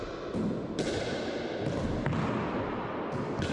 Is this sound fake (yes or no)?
no